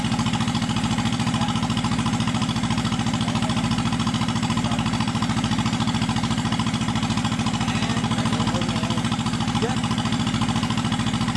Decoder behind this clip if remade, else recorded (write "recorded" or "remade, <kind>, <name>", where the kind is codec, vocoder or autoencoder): recorded